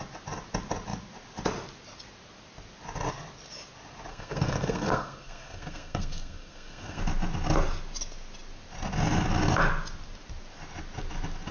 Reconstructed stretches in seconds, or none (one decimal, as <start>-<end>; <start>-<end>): 4.1-7.0